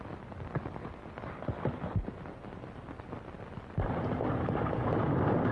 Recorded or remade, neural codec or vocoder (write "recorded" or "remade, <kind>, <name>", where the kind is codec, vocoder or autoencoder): recorded